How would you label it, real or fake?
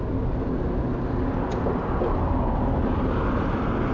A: real